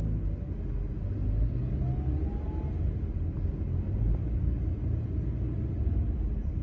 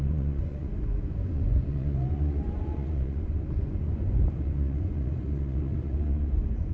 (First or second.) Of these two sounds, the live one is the first